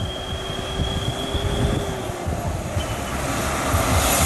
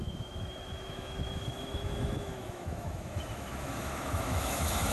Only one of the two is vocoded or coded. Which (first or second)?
second